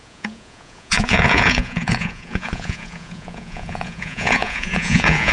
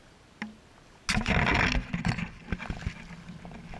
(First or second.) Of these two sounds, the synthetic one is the first